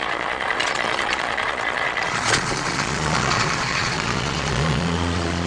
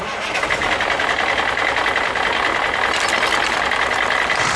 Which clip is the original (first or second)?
second